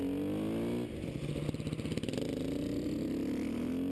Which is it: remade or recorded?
recorded